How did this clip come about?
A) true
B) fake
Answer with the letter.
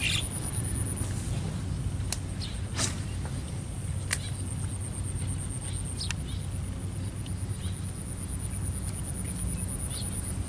A